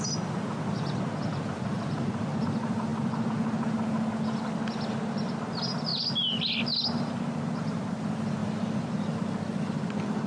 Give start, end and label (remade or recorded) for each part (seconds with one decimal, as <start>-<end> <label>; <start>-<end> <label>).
0.0-8.4 recorded; 8.4-8.9 remade; 8.9-10.3 recorded